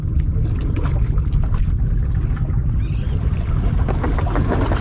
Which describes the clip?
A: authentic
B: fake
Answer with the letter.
A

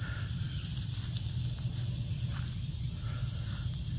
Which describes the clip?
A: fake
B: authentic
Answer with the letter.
B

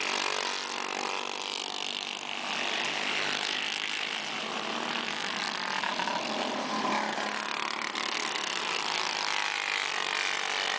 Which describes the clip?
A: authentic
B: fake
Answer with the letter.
A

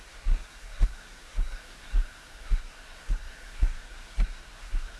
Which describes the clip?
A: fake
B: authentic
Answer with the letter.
A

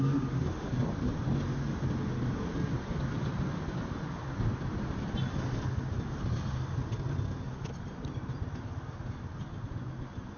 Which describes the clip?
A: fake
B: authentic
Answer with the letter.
B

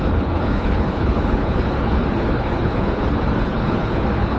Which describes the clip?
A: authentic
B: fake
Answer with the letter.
B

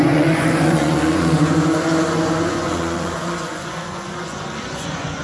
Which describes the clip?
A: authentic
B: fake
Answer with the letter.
B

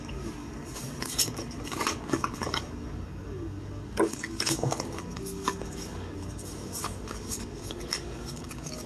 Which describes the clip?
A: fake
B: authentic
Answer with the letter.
A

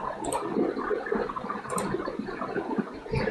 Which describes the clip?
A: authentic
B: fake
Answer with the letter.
A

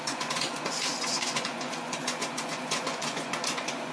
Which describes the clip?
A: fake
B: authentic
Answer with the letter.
A